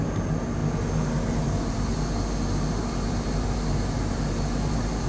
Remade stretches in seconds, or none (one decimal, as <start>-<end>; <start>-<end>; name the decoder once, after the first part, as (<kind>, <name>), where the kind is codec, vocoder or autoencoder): 0.0-0.6 (vocoder, BigVGAN v2); 1.3-1.9; 2.8-5.1